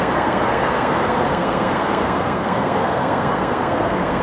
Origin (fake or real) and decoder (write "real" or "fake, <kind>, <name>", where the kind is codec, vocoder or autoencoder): fake, codec, SNAC